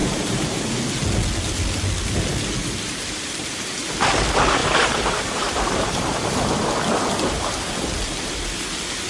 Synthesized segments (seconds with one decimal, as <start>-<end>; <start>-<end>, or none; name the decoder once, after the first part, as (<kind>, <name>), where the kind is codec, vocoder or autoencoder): 0.0-0.6 (vocoder, BigVGAN v2); 2.6-3.8; 4.6-6.5